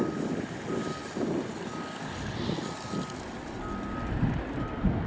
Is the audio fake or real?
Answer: real